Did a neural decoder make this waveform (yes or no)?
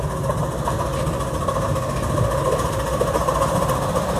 no